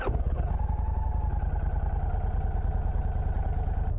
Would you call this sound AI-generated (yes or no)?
no